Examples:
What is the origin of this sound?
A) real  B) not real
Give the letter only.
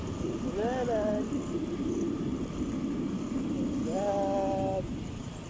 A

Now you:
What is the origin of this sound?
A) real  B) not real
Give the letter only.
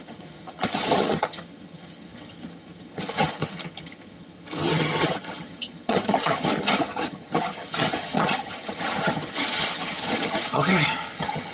B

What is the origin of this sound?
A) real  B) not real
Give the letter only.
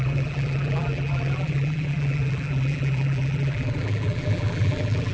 B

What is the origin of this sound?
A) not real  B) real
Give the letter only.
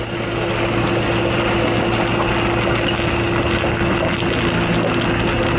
B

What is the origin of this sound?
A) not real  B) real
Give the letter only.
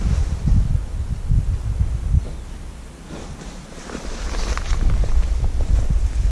B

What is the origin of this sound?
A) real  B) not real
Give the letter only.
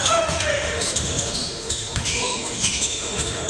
B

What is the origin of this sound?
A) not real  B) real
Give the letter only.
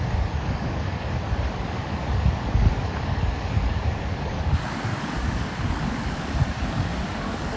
A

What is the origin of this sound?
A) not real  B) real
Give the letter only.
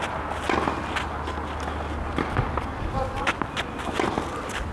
B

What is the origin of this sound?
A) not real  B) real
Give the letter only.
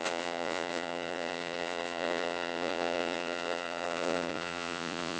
A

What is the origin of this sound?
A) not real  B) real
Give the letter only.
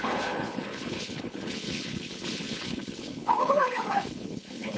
A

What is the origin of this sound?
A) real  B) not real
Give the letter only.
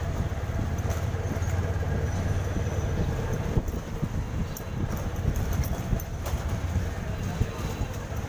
A